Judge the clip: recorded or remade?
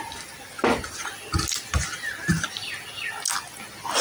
recorded